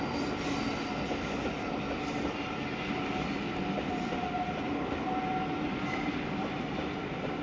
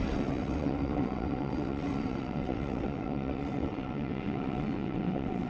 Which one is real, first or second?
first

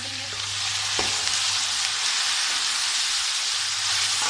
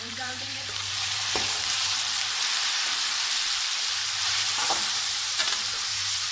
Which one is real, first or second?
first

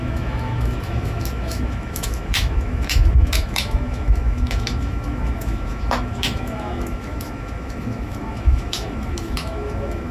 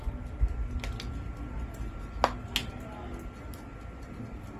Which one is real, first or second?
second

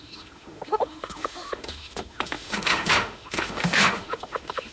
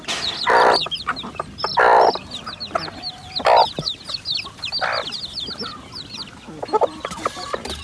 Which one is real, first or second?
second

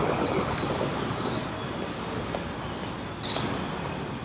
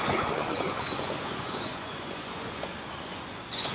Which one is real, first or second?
first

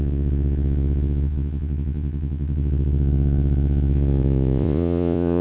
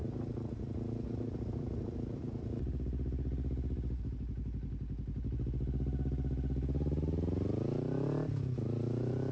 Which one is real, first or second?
second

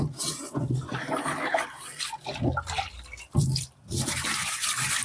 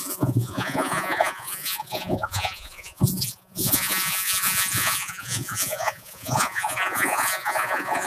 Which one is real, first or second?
first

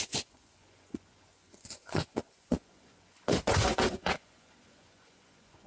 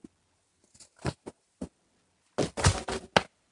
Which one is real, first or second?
second